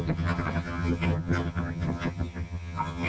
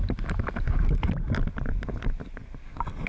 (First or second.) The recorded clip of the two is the second